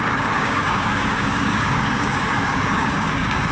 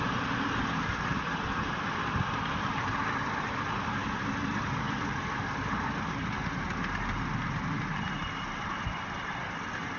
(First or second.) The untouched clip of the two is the second